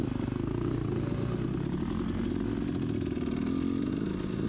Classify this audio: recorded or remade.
recorded